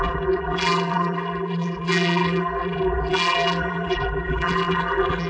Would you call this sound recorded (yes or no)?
no